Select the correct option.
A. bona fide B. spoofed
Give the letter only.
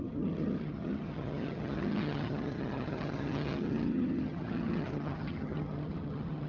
B